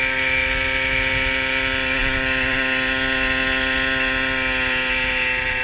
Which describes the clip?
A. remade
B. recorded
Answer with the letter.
B